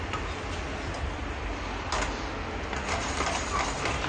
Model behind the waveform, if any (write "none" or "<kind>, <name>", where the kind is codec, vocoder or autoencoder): none